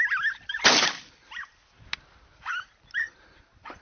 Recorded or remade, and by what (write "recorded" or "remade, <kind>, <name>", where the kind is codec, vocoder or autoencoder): recorded